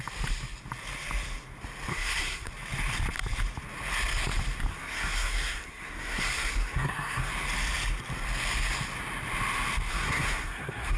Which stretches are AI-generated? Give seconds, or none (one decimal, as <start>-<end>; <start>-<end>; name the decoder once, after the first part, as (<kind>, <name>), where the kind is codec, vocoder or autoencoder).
1.9-2.5 (codec, SNAC); 4.7-7.3; 9.9-11.0